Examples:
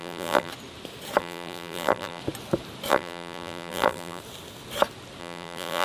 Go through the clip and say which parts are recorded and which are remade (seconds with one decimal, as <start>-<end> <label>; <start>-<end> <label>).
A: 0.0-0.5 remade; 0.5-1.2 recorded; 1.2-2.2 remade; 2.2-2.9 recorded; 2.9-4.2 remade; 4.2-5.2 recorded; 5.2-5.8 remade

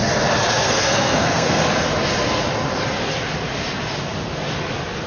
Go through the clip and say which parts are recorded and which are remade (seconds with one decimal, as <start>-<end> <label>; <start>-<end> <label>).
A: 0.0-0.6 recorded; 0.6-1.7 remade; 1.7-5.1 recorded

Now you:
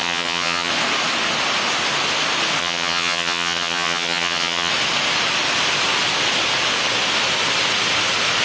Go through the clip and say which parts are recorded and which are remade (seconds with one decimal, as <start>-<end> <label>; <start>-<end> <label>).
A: 0.0-0.7 remade; 0.7-2.6 recorded; 2.6-4.7 remade; 4.7-8.4 recorded

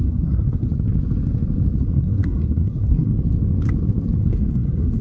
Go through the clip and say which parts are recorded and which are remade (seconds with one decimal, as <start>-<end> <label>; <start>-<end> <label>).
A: 0.0-0.7 remade; 0.7-1.8 recorded; 1.8-3.1 remade; 3.1-4.2 recorded; 4.2-5.0 remade

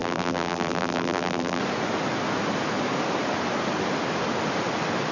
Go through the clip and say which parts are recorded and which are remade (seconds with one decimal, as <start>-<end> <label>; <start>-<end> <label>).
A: 0.0-1.6 remade; 1.6-5.1 recorded

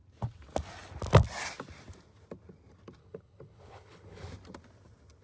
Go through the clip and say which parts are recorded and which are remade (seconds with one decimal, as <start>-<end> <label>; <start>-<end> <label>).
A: 0.0-3.0 recorded; 3.0-4.3 remade; 4.3-5.2 recorded